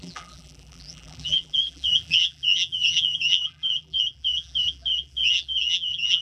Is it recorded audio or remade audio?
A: remade